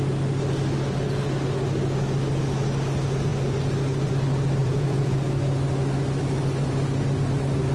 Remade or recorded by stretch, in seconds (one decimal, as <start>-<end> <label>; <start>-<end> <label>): 0.0-4.6 recorded; 4.6-5.2 remade; 5.2-7.7 recorded